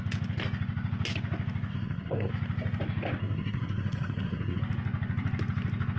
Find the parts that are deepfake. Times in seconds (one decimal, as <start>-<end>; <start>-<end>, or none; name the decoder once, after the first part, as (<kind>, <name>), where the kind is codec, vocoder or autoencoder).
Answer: 1.7-2.3 (codec, SNAC); 3.2-4.6